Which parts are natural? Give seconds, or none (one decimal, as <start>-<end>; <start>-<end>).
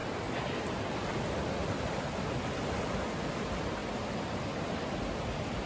0.0-5.7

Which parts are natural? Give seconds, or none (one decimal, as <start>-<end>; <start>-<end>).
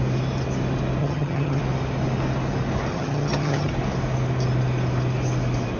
0.0-1.0; 1.6-2.9; 3.7-5.8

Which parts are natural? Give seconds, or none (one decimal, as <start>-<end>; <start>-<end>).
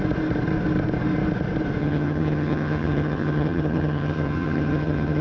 0.0-1.8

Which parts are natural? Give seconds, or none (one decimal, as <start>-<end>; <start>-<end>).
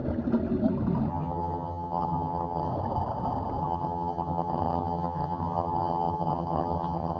0.0-1.1; 2.7-3.6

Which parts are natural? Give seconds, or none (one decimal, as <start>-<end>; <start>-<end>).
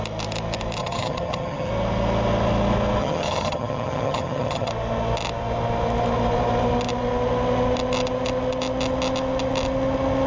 0.0-0.8; 1.7-3.0; 4.7-10.3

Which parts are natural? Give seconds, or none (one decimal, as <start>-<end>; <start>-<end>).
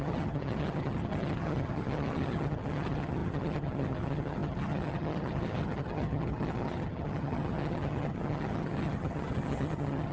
none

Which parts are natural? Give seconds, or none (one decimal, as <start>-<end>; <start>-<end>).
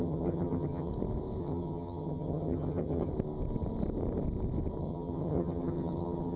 0.9-1.4; 3.1-4.8